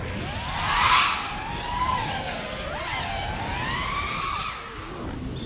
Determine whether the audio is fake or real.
real